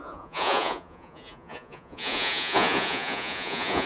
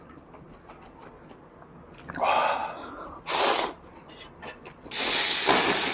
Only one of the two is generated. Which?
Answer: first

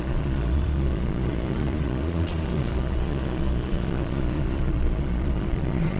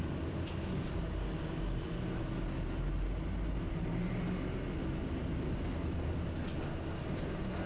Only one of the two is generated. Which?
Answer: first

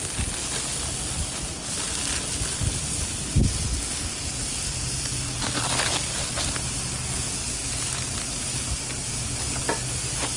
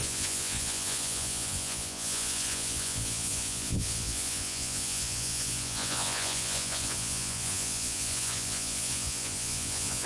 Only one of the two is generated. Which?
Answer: second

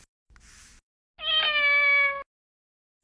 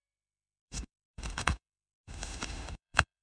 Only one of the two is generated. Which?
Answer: second